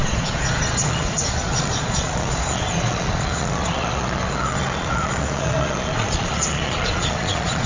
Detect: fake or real fake